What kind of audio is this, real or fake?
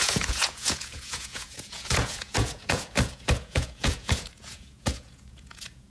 fake